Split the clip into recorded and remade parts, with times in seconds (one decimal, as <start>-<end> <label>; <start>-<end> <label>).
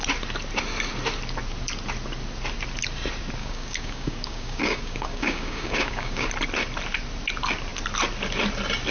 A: 0.0-3.4 recorded; 3.4-6.3 remade; 6.3-8.9 recorded